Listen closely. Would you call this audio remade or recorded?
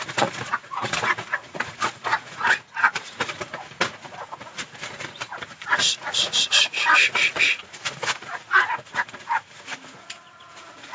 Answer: remade